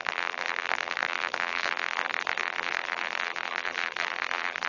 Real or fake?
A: fake